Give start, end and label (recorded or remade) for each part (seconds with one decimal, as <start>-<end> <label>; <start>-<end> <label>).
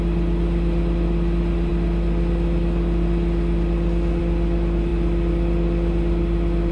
0.0-6.7 recorded